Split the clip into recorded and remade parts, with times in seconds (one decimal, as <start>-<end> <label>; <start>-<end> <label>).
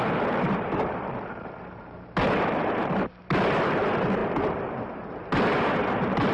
0.0-6.3 recorded